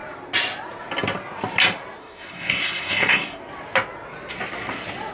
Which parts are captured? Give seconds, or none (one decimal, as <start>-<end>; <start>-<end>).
0.0-2.0; 3.4-5.1